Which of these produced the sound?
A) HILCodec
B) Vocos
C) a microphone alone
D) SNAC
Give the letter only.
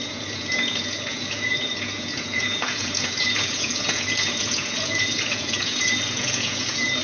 B